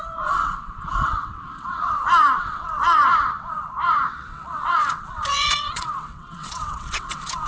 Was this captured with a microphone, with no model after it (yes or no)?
no